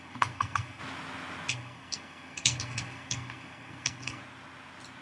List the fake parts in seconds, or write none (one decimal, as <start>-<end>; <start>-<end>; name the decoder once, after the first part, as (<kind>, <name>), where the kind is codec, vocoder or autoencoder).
0.0-0.8 (codec, SNAC); 1.5-4.2